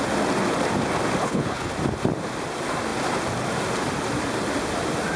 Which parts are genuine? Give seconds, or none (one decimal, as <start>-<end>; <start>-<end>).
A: 0.0-1.2; 1.7-5.2